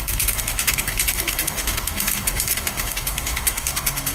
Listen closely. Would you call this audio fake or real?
fake